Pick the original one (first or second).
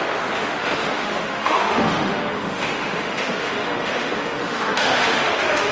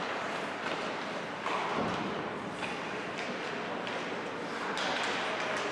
second